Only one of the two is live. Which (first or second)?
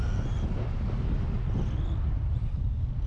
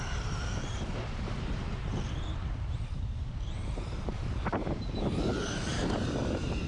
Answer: first